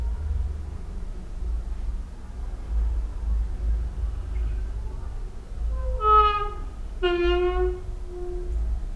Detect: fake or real real